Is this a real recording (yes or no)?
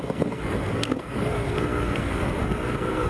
no